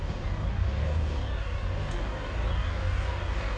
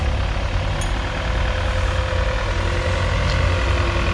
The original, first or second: second